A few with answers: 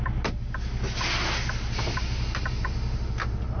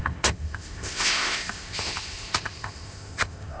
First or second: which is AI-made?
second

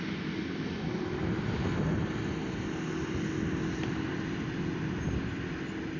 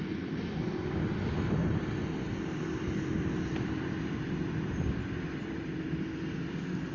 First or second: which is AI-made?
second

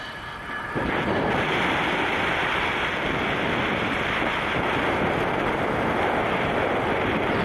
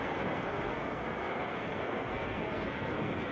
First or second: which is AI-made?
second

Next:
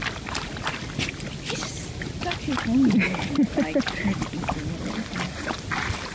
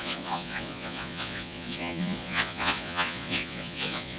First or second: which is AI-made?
second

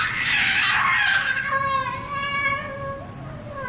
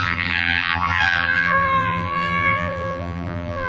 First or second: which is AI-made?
second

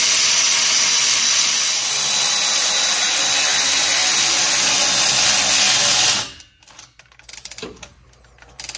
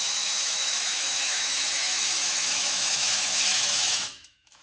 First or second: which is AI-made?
second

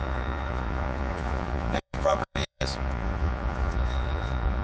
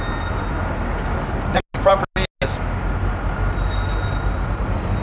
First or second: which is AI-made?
first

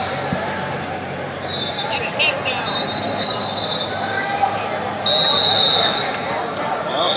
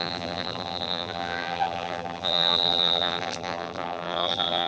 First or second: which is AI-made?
second